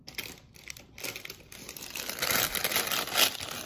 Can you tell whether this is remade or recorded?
recorded